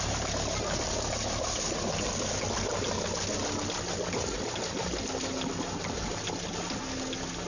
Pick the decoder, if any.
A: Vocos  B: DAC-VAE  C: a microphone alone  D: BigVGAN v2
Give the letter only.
C